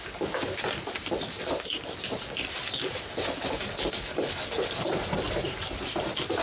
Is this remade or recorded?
recorded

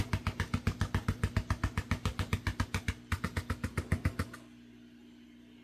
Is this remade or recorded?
recorded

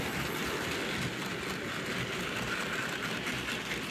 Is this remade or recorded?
recorded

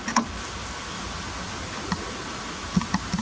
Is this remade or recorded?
recorded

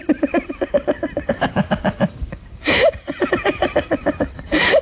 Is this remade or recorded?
remade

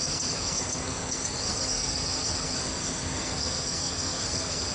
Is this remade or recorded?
remade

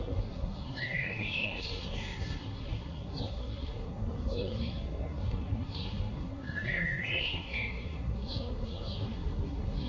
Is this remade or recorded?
remade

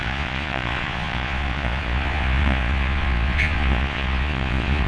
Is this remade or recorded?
remade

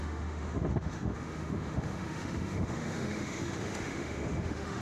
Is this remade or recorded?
remade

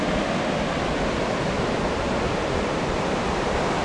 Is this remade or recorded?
recorded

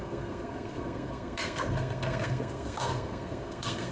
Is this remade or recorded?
remade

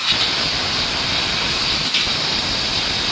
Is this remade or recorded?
recorded